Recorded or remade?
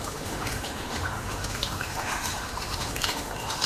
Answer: remade